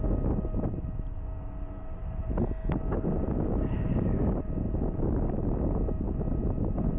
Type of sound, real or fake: real